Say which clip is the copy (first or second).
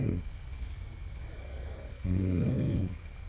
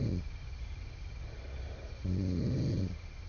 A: first